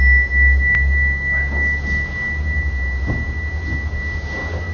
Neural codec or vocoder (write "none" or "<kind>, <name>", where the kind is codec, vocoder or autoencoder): none